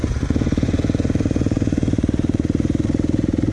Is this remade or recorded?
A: remade